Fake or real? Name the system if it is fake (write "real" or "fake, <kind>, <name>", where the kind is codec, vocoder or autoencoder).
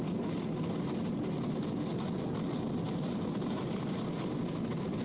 real